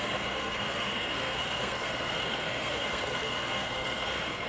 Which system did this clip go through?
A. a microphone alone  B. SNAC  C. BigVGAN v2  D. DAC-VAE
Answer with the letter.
B